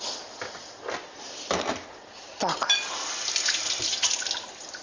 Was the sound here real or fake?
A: real